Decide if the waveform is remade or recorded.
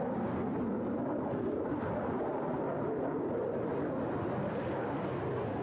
recorded